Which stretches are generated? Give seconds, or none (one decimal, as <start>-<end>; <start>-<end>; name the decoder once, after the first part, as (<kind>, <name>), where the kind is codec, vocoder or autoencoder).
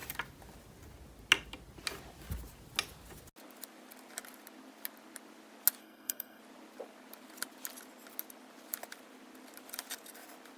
5.8-6.4 (codec, SNAC)